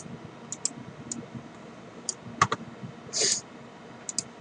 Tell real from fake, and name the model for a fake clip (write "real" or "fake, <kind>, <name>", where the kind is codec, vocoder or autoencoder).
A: real